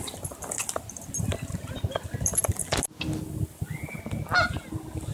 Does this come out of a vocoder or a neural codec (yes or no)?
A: no